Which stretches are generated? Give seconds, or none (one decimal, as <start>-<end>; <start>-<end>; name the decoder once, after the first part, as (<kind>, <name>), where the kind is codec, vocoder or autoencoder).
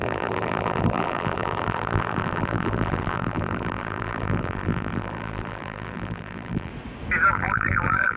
0.0-6.7 (vocoder, BigVGAN v2); 7.3-8.2